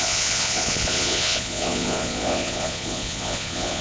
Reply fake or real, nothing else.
fake